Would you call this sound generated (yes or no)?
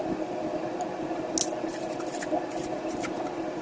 no